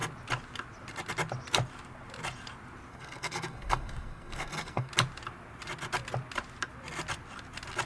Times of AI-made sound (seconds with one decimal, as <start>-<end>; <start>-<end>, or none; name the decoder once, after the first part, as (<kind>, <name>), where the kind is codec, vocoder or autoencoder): 2.9-4.9 (codec, SNAC)